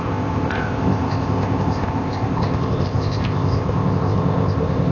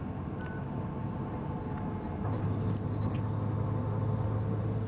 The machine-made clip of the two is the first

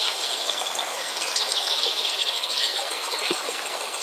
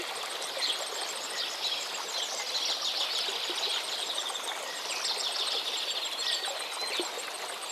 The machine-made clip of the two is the first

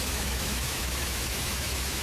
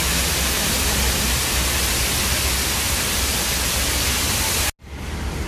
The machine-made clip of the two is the first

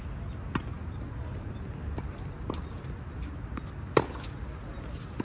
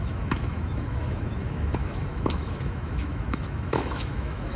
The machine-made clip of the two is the second